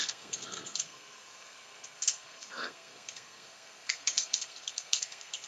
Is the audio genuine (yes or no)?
no